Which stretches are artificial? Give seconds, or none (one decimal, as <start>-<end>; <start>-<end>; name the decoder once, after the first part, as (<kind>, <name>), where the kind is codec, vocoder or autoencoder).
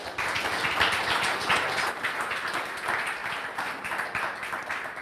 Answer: none